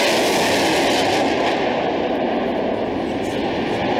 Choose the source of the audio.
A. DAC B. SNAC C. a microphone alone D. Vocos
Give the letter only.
C